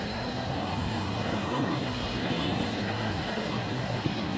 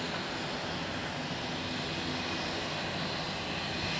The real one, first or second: second